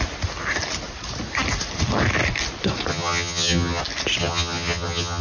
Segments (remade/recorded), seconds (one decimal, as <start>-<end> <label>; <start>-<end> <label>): 0.0-2.9 recorded; 2.9-3.8 remade; 3.8-4.2 recorded; 4.2-5.2 remade

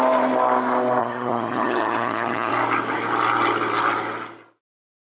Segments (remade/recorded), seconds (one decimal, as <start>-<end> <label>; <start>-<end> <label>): 0.0-1.0 recorded; 1.0-2.5 remade; 2.5-5.2 recorded

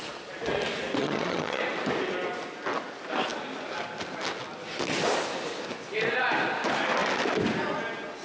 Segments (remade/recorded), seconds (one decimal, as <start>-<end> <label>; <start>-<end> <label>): 0.0-1.0 recorded; 1.0-1.6 remade; 1.6-8.2 recorded

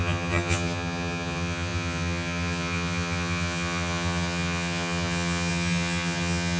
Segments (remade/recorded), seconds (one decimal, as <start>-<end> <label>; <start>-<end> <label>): 0.0-6.6 remade

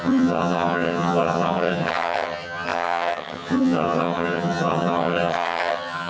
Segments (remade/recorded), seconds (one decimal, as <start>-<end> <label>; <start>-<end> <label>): 0.0-6.1 remade

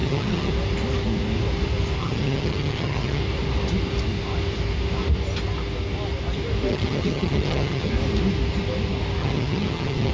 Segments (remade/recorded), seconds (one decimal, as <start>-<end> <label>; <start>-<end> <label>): 0.0-0.5 remade; 0.5-2.0 recorded; 2.0-3.2 remade; 3.2-6.7 recorded; 6.7-7.9 remade; 7.9-9.2 recorded; 9.2-10.1 remade

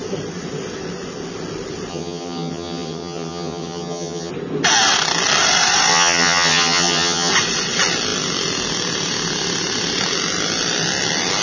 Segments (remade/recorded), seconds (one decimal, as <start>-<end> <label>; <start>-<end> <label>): 0.0-1.9 recorded; 1.9-4.3 remade; 4.3-5.9 recorded; 5.9-7.3 remade; 7.3-11.4 recorded